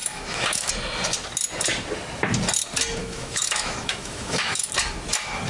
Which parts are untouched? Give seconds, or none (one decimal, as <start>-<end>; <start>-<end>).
0.7-3.0; 4.7-5.5